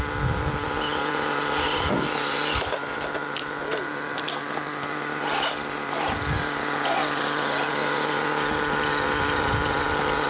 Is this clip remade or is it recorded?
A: recorded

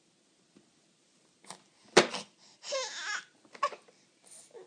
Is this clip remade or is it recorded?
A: recorded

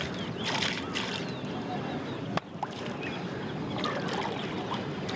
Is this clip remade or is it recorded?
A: recorded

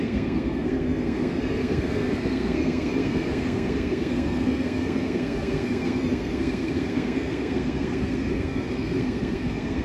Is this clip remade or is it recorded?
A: remade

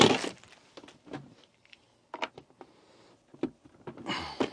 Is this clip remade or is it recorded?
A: recorded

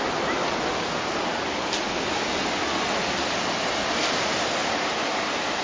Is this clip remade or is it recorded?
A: recorded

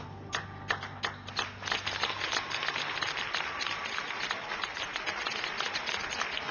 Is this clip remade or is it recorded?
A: recorded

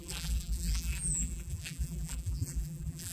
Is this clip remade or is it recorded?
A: remade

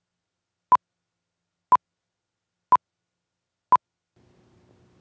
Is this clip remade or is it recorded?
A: recorded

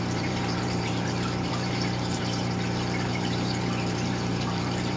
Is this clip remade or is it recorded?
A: remade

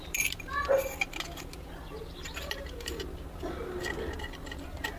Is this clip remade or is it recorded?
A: recorded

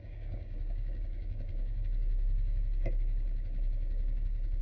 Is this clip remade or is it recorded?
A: remade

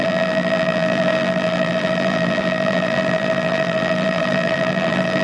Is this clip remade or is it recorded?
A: remade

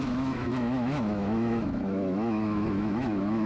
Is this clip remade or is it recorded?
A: remade